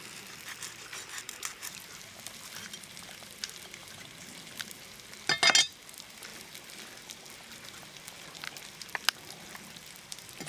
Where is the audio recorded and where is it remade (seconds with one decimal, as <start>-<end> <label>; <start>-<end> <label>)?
0.0-10.5 recorded